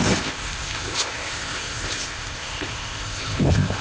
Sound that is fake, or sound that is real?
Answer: fake